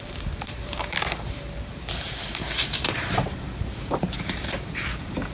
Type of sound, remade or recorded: remade